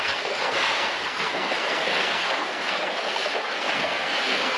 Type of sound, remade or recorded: remade